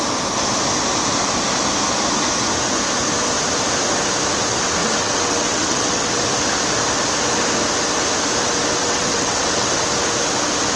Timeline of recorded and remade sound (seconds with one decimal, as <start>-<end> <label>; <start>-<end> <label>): 0.0-4.8 recorded; 4.8-6.2 remade; 6.2-8.8 recorded; 8.8-9.7 remade; 9.7-10.8 recorded

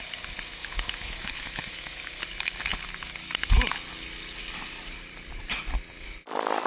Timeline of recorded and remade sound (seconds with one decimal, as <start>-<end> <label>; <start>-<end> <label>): 0.0-0.6 recorded; 0.6-2.2 remade; 2.2-6.7 recorded

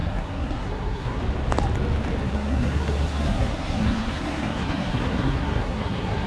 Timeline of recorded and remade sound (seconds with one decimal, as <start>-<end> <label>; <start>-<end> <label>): 0.0-1.2 remade; 1.2-2.2 recorded; 2.2-6.3 remade

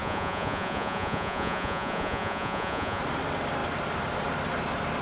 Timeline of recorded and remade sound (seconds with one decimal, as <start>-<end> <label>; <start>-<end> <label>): 0.0-3.0 remade; 3.0-5.0 recorded

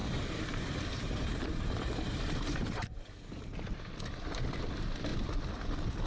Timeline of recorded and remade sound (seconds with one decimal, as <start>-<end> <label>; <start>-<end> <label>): 0.0-3.4 remade; 3.4-6.1 recorded

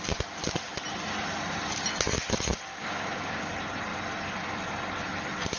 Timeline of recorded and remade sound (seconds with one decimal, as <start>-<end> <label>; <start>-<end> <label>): 0.0-2.7 recorded; 2.7-3.5 remade; 3.5-5.6 recorded

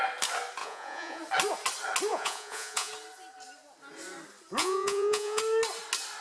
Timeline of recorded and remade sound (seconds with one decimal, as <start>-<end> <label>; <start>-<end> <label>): 0.0-0.6 recorded; 0.6-1.2 remade; 1.2-2.1 recorded; 2.1-2.9 remade; 2.9-4.6 recorded; 4.6-5.4 remade; 5.4-6.2 recorded

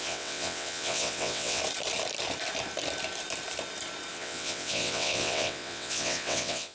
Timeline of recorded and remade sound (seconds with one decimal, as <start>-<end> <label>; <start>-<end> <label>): 0.0-1.6 remade; 1.6-4.1 recorded; 4.1-6.7 remade